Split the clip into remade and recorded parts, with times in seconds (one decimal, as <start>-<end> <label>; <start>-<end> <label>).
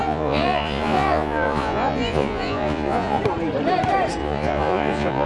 0.0-3.2 remade; 3.2-4.2 recorded; 4.2-5.3 remade